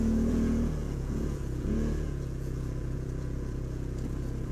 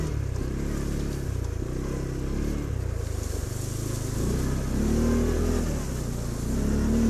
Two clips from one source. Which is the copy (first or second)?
first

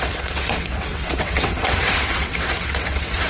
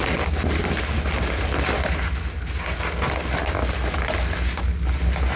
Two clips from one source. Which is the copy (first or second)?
first